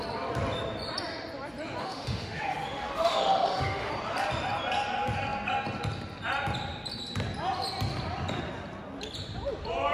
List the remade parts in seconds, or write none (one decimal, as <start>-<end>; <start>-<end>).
1.8-3.9